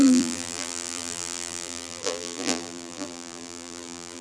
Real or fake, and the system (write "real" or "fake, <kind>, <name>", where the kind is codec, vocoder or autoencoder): fake, vocoder, BigVGAN v2